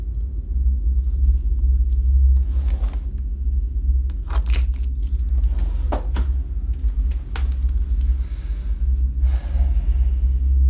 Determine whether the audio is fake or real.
real